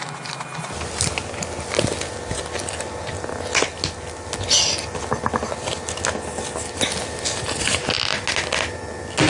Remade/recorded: recorded